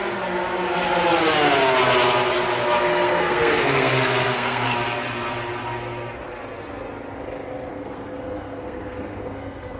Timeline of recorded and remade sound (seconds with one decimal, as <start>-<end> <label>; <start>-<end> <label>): 0.0-2.9 recorded; 2.9-4.8 remade; 4.8-7.7 recorded; 7.7-9.8 remade